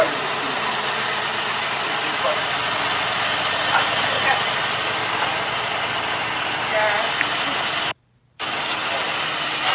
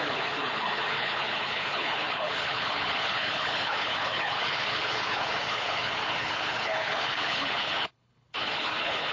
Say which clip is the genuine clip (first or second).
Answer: first